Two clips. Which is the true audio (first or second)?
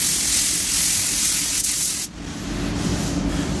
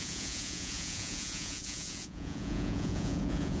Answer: first